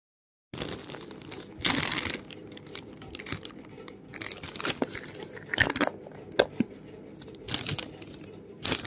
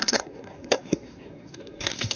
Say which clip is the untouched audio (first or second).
first